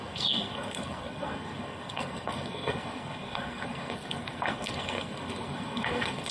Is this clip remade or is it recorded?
remade